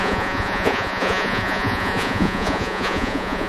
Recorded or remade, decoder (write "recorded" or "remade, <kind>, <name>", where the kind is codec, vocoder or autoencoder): remade, vocoder, Vocos